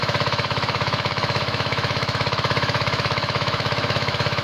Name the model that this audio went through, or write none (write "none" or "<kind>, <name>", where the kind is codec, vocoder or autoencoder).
autoencoder, DAC-VAE